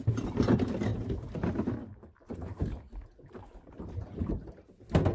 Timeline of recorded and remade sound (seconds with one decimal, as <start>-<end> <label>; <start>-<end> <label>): 0.0-5.1 recorded

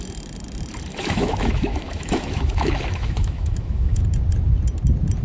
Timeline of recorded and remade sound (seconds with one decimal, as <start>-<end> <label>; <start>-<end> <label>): 0.0-0.9 recorded; 0.9-4.0 remade; 4.0-5.2 recorded

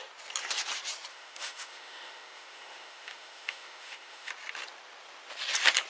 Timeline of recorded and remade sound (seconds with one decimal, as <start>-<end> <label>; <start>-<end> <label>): 0.0-1.1 recorded; 1.1-4.3 remade; 4.3-5.9 recorded

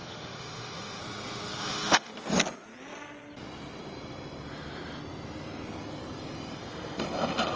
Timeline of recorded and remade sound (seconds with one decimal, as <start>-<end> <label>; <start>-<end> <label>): 0.0-1.0 remade; 1.0-1.6 recorded; 1.6-2.1 remade; 2.1-7.6 recorded

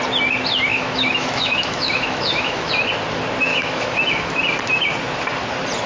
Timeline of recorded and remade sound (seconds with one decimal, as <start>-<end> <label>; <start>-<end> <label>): 0.0-0.7 recorded; 0.7-2.7 remade; 2.7-3.5 recorded; 3.5-4.4 remade; 4.4-5.9 recorded

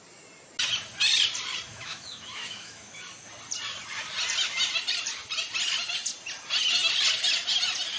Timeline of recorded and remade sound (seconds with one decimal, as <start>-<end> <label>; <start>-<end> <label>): 0.0-1.7 recorded; 1.7-3.0 remade; 3.0-8.0 recorded

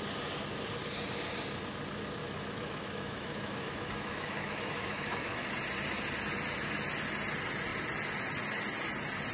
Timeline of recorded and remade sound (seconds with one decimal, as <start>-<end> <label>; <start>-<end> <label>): 0.0-2.2 recorded; 2.2-5.5 remade; 5.5-9.3 recorded

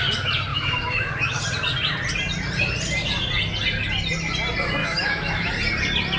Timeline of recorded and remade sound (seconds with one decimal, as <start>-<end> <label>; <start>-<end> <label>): 0.0-0.5 recorded; 0.5-1.4 remade; 1.4-4.8 recorded; 4.8-5.5 remade; 5.5-6.2 recorded